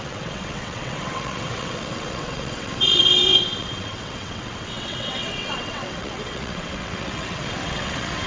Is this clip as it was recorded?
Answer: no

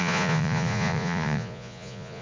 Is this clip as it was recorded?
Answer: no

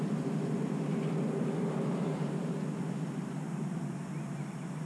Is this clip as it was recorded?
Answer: yes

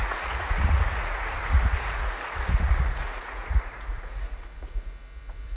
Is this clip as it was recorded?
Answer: no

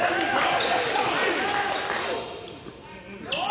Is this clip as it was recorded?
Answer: yes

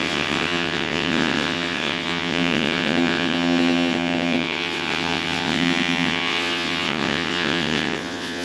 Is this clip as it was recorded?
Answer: no